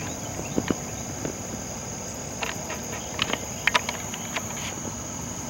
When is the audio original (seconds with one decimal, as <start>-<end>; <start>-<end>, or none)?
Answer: 2.8-5.5